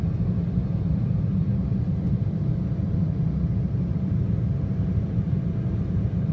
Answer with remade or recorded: recorded